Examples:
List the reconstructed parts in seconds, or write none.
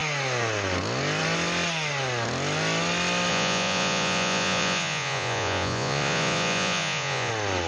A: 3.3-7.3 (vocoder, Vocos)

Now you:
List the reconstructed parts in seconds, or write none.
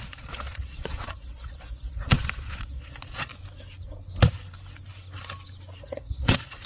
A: 0.0-3.3 (vocoder, Vocos); 5.8-6.7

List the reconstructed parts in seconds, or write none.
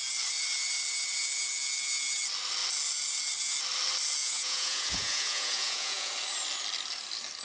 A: 4.2-6.1 (vocoder, Vocos)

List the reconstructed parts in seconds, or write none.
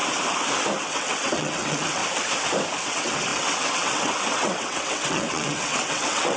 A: 0.8-2.0 (vocoder, WaveNeXt); 2.9-6.4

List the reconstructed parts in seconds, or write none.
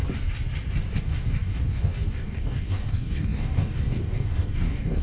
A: 1.0-5.0 (codec, DAC)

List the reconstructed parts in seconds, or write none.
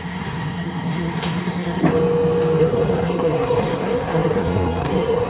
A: 0.0-1.8 (codec, SNAC); 2.6-5.3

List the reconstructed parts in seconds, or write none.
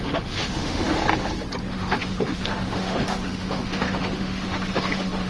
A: 0.0-1.0 (autoencoder, DAC-VAE); 1.6-5.3